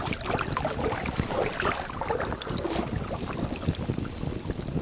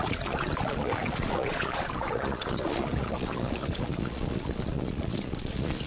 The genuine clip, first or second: first